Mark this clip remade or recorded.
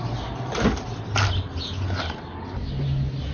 recorded